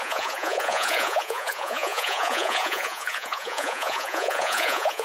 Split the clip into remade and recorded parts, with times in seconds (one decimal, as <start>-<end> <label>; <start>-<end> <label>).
0.0-5.0 remade